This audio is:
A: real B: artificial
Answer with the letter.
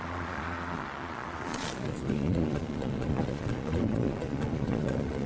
B